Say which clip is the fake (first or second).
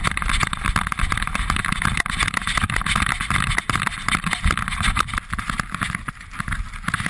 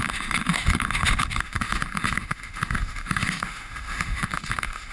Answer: second